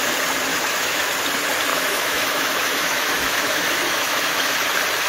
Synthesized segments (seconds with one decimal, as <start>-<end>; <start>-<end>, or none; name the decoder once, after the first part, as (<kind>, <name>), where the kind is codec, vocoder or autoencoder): 0.5-1.1 (autoencoder, DAC-VAE); 1.7-4.6